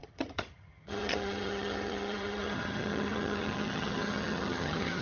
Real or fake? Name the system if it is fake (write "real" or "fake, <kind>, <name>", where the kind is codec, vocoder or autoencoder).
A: fake, vocoder, HiFi-GAN